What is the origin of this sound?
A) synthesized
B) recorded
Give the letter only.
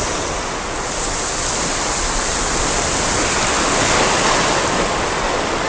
A